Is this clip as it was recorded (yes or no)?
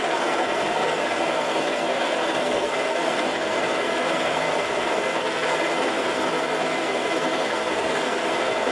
no